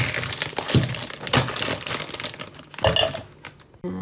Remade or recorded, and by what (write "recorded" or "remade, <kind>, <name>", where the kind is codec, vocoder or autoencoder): recorded